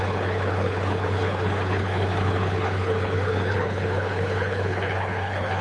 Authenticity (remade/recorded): remade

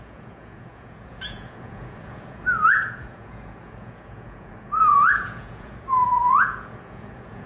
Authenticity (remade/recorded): remade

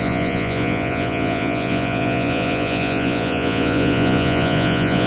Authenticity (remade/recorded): remade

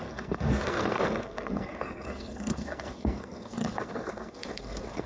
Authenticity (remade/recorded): remade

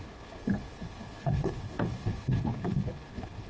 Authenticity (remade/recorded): remade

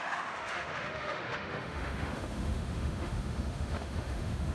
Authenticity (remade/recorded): remade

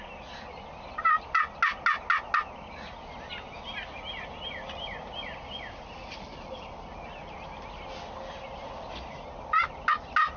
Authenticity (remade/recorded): recorded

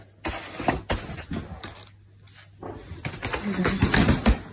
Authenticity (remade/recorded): recorded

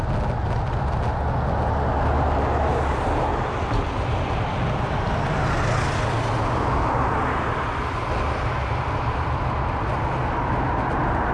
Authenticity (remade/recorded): recorded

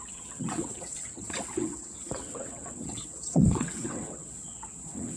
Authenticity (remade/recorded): remade